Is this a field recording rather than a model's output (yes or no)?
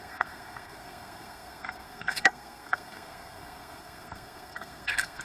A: no